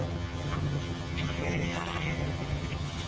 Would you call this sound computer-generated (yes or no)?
yes